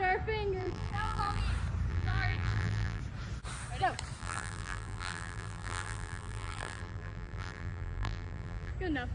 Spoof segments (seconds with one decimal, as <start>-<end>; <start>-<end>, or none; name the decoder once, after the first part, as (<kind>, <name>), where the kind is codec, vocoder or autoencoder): 0.6-1.4 (vocoder, BigVGAN v2); 1.9-3.0; 4.2-8.7